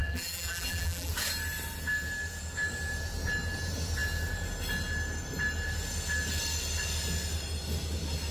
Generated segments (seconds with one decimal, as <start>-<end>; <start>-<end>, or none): 0.0-1.1